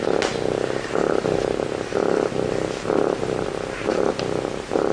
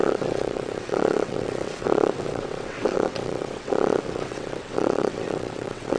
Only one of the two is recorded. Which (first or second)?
first